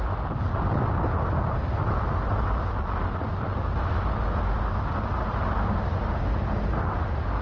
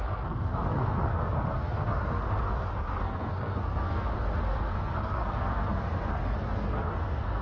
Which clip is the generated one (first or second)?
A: second